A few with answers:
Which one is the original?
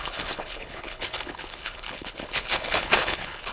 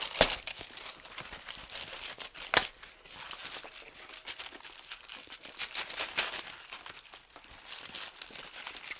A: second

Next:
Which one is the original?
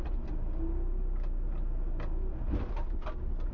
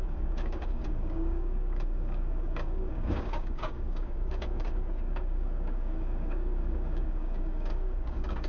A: first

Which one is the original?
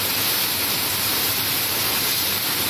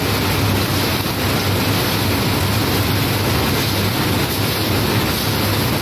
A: second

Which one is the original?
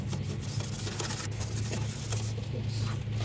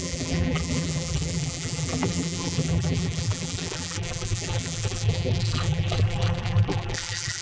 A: first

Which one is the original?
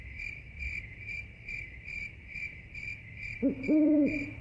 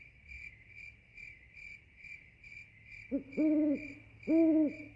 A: second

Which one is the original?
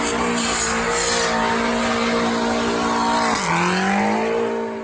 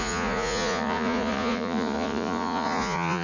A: first